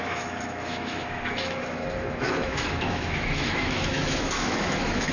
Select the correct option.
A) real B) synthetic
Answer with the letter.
B